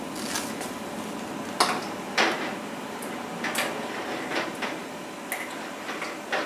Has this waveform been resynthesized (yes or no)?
no